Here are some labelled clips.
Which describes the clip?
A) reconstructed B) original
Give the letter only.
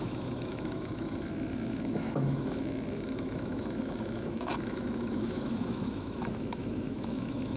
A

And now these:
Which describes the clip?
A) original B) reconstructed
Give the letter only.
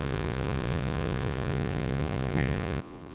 B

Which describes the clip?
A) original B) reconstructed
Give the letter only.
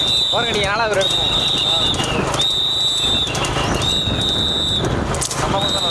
A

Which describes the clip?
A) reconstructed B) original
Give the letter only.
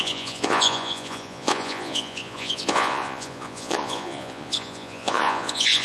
A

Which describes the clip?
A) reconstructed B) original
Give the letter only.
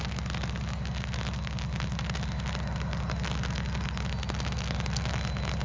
B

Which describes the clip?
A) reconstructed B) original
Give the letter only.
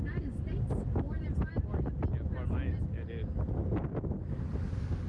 B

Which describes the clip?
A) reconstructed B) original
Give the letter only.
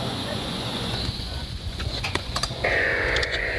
A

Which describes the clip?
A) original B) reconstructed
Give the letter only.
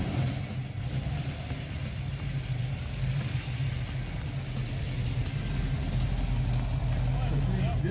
A